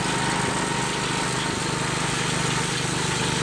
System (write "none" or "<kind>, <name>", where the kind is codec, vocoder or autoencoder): none